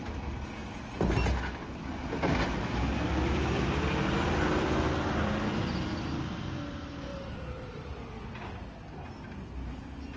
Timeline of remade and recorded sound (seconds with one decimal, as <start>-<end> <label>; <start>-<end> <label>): 0.0-7.1 recorded; 7.1-8.3 remade; 8.3-10.2 recorded